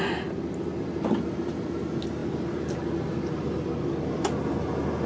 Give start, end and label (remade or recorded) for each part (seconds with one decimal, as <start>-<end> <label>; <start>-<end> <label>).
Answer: 0.0-5.1 recorded